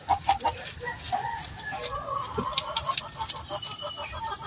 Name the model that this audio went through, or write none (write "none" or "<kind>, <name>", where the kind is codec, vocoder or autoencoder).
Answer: none